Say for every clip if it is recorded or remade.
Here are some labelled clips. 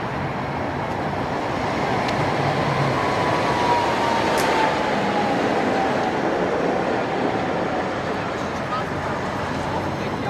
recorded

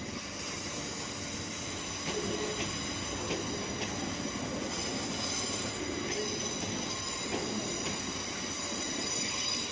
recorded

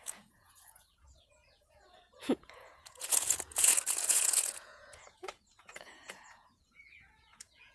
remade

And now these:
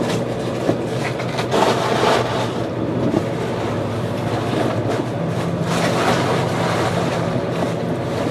recorded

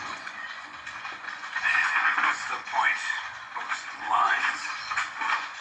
remade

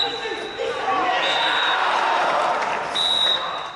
recorded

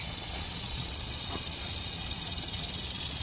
remade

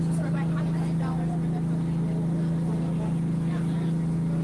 recorded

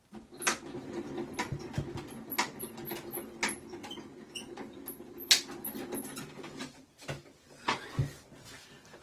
recorded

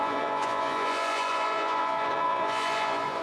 remade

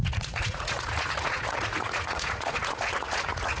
remade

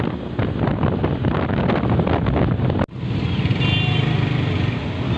recorded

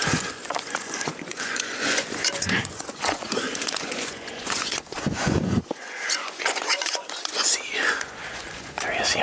remade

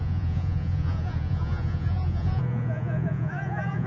remade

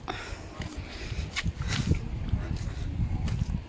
recorded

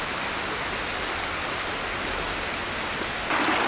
recorded